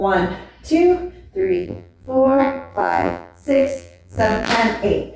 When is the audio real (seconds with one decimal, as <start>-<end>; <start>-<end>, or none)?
0.0-1.4; 4.5-5.2